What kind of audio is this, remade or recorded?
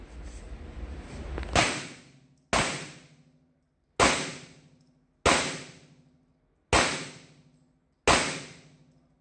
recorded